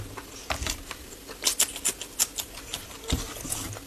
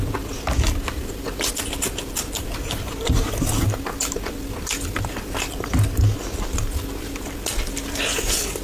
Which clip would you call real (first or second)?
first